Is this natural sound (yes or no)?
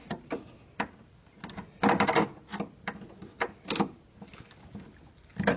yes